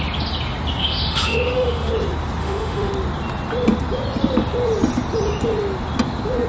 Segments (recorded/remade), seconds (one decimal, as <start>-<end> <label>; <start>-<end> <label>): 0.0-0.8 recorded; 0.8-1.9 remade; 1.9-2.4 recorded; 2.4-2.9 remade; 2.9-6.5 recorded